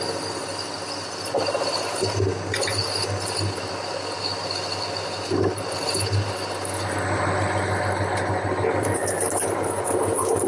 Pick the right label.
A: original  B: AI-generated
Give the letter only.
A